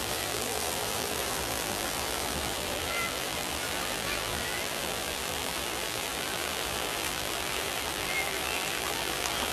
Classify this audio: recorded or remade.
remade